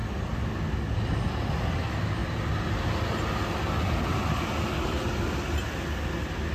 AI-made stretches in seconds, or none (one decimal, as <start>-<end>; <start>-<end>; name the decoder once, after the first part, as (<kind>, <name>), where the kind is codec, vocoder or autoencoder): none